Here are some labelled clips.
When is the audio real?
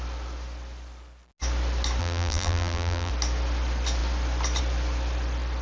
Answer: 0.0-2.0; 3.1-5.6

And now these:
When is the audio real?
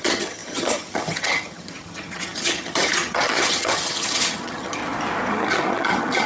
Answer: 4.8-5.3